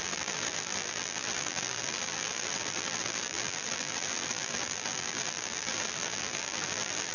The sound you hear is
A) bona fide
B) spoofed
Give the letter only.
B